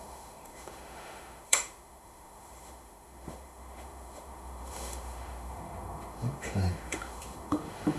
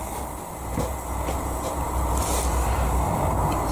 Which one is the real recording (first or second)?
second